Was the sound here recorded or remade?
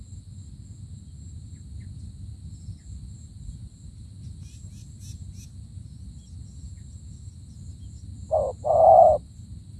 recorded